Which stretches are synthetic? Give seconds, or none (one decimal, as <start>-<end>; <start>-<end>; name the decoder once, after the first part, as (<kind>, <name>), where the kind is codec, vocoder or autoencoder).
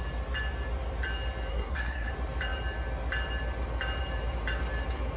1.5-2.1 (codec, SNAC)